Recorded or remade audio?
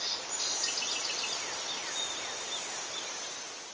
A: recorded